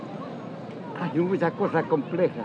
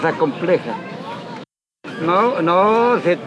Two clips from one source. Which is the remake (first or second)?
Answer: second